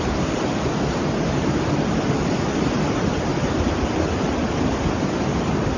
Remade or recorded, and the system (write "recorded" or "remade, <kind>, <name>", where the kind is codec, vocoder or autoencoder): recorded